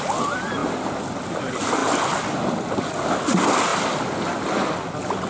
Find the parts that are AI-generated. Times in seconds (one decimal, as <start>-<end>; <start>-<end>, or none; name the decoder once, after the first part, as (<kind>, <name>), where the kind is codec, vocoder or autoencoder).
none